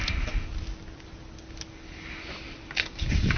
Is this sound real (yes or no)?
yes